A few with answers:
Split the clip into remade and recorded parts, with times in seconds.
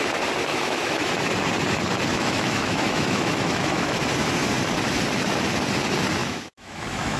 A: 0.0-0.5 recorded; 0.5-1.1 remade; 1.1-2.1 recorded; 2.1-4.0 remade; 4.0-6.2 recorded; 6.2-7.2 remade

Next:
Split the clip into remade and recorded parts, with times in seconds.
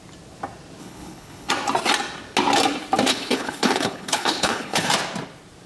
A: 0.0-0.8 recorded; 0.8-1.5 remade; 1.5-3.1 recorded; 3.1-4.9 remade; 4.9-5.7 recorded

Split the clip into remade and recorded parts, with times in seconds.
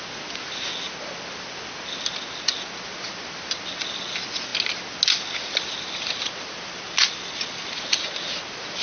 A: 0.0-8.8 recorded